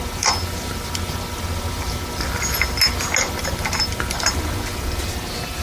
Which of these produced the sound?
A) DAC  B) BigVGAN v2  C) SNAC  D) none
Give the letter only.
D